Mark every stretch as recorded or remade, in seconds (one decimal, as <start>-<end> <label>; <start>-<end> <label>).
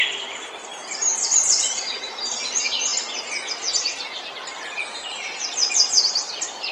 0.0-2.9 remade; 2.9-3.5 recorded; 3.5-6.7 remade